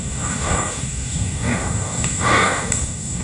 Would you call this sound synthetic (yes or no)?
yes